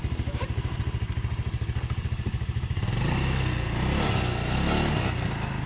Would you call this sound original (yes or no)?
yes